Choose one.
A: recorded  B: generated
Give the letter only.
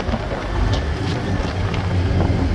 A